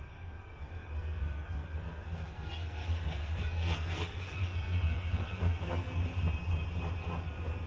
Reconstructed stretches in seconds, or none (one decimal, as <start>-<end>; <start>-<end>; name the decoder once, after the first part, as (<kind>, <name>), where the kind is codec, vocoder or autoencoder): 0.0-6.0 (codec, SNAC)